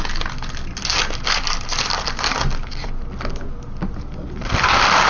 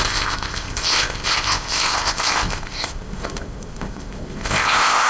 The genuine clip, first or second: first